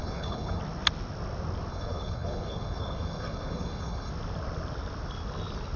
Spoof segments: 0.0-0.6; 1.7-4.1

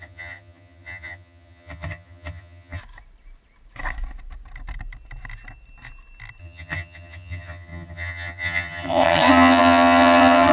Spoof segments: 0.0-2.8; 6.4-10.5

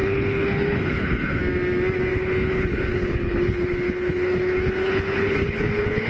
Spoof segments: 0.0-1.4; 2.1-6.1

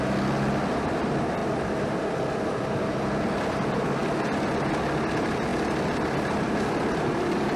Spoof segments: 0.0-4.0; 5.1-5.5; 6.4-7.6

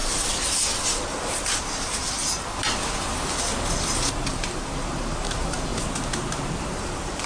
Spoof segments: 1.1-2.2; 4.3-5.7; 6.6-7.3